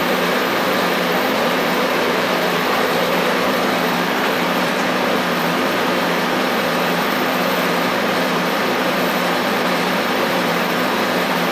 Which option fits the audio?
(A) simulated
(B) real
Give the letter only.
A